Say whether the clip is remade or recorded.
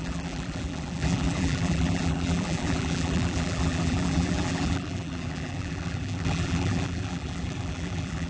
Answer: remade